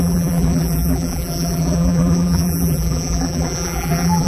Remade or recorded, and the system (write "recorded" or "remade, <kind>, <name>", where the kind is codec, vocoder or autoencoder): remade, vocoder, BigVGAN v2